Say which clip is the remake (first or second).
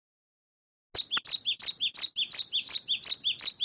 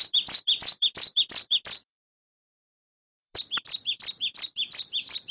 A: second